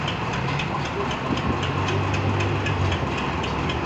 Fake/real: real